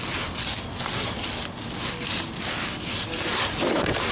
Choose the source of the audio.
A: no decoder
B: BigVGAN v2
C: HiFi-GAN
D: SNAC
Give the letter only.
A